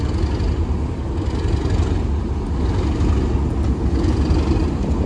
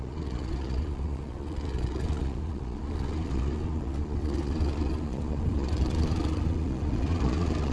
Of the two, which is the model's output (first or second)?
second